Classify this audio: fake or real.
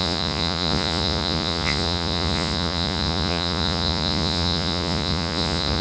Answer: fake